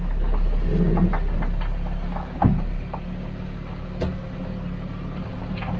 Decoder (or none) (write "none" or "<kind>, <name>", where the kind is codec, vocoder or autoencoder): none